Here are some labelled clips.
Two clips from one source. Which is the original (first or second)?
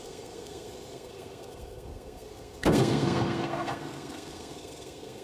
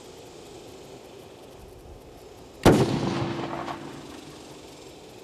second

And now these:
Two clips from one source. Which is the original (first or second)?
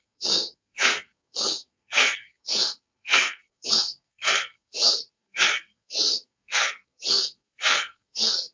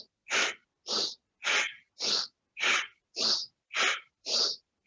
second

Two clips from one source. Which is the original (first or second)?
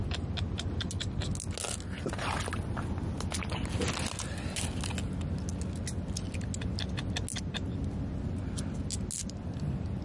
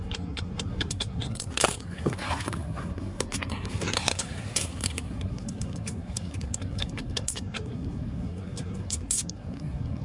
first